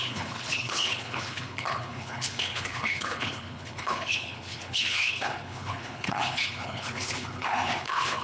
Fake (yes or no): yes